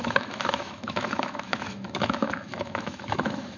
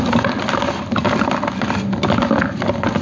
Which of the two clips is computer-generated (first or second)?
first